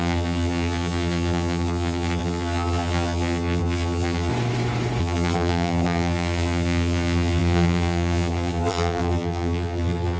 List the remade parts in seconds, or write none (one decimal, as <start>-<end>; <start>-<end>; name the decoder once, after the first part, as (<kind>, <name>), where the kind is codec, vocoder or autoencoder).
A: 0.0-4.3 (vocoder, BigVGAN v2); 5.0-10.2